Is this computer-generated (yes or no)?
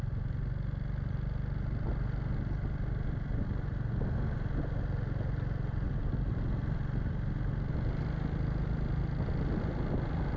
no